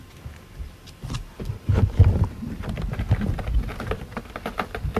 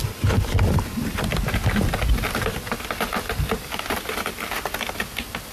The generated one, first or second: first